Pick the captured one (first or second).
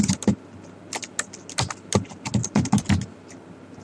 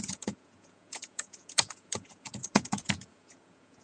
first